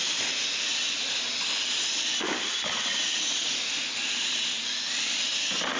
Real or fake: real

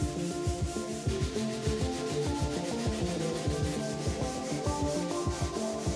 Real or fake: fake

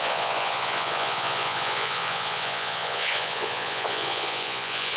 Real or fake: fake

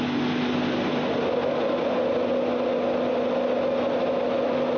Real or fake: real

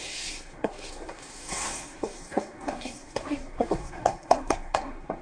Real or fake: fake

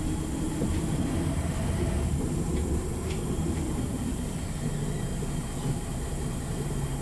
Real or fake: real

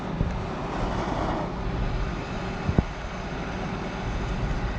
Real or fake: real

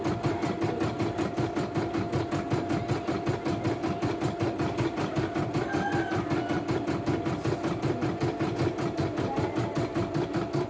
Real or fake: real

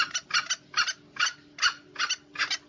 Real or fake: real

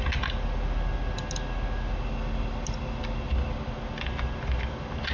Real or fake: real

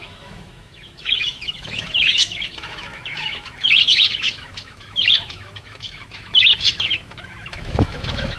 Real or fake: fake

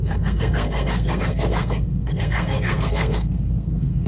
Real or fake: fake